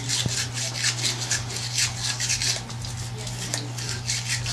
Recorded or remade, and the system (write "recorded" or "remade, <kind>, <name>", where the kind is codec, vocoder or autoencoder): recorded